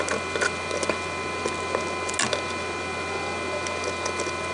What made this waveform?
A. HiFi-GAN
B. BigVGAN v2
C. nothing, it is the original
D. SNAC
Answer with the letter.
C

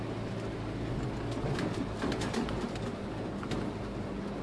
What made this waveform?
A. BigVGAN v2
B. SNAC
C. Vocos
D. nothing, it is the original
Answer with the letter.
D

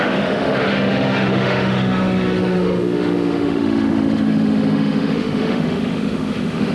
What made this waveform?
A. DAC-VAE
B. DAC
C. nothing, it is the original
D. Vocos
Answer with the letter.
A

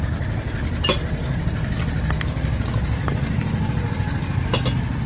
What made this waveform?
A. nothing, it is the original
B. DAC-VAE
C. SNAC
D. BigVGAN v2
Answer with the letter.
A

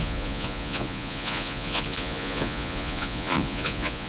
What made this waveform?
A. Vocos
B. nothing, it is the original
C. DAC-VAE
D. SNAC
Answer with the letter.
A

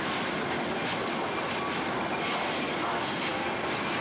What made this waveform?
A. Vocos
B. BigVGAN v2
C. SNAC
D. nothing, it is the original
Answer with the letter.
D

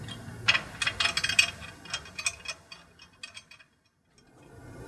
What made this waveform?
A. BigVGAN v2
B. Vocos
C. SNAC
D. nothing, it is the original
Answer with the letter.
D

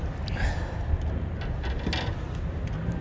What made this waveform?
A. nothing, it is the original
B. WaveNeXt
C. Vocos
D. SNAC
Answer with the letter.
A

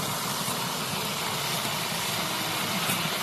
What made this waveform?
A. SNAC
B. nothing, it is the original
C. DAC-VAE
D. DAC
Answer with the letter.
B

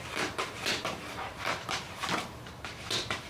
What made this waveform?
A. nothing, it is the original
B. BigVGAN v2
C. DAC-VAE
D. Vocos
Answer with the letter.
B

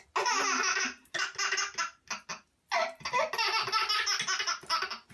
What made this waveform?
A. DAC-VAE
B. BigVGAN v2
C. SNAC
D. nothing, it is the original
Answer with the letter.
D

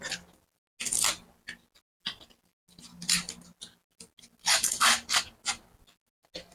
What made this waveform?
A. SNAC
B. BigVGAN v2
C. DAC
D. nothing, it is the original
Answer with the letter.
D